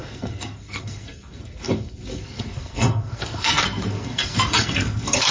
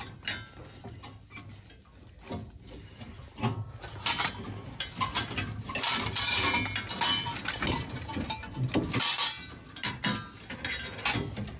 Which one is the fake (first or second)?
first